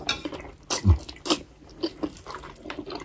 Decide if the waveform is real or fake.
real